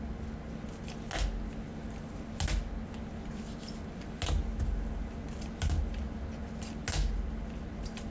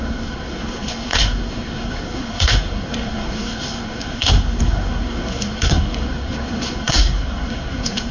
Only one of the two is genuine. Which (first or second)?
first